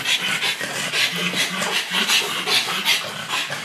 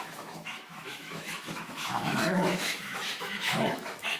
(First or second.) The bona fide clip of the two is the first